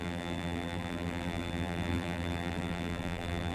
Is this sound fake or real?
fake